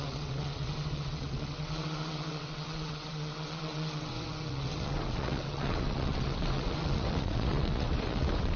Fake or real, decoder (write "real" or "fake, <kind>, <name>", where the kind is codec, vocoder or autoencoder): fake, vocoder, WaveNeXt